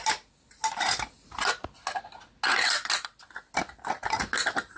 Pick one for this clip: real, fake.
real